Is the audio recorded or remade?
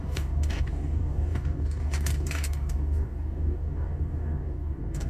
remade